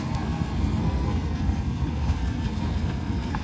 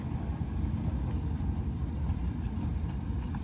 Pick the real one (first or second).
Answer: second